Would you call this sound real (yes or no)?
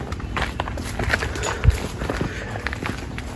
yes